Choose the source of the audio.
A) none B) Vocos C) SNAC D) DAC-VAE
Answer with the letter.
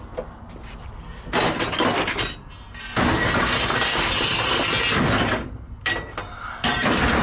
A